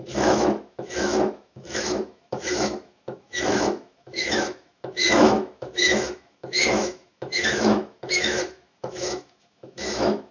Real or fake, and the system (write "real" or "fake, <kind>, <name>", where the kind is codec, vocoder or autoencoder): fake, autoencoder, DAC-VAE